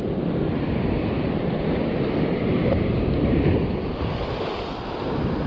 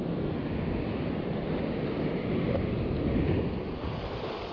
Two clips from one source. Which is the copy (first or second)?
first